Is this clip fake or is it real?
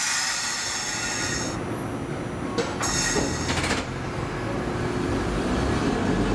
real